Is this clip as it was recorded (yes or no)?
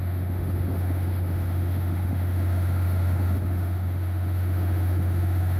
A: no